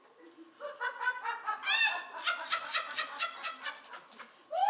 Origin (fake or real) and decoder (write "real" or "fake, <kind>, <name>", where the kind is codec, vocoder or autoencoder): real